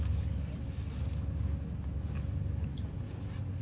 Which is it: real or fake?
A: real